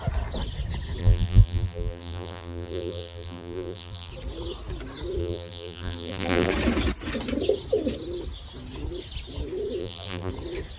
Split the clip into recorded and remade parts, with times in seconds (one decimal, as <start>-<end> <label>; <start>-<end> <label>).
0.0-1.0 recorded; 1.0-4.1 remade; 4.1-5.2 recorded; 5.2-6.5 remade; 6.5-9.8 recorded; 9.8-10.3 remade; 10.3-10.8 recorded